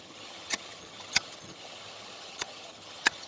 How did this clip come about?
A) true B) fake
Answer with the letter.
B